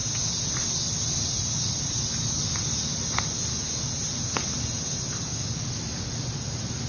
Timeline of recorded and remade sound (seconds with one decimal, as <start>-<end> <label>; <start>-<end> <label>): 0.0-5.3 recorded; 5.3-5.8 remade; 5.8-6.9 recorded